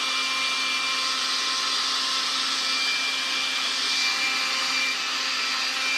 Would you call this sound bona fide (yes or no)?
yes